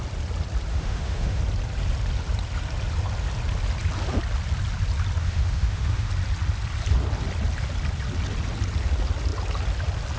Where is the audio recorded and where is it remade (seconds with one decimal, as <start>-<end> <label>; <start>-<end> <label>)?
0.0-0.7 recorded; 0.7-1.4 remade; 1.4-5.2 recorded; 5.2-6.1 remade; 6.1-10.2 recorded